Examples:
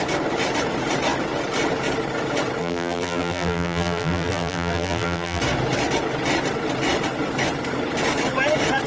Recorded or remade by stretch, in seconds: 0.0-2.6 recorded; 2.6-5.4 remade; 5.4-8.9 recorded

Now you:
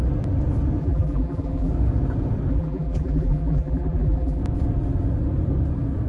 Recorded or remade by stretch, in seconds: 0.0-0.8 recorded; 0.8-1.7 remade; 1.7-2.5 recorded; 2.5-4.4 remade; 4.4-6.1 recorded

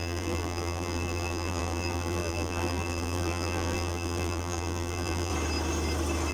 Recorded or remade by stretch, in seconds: 0.0-5.3 remade; 5.3-6.3 recorded

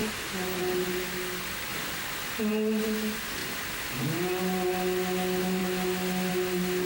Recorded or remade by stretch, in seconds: 0.0-0.6 remade; 0.6-6.8 recorded

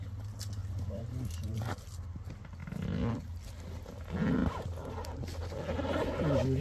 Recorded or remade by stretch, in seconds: 0.0-0.6 recorded; 0.6-1.6 remade; 1.6-4.4 recorded; 4.4-5.2 remade; 5.2-6.6 recorded